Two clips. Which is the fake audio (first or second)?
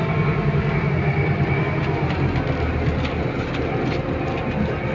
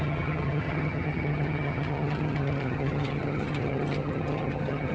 second